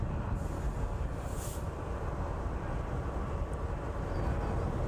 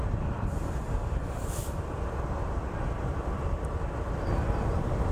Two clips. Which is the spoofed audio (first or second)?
second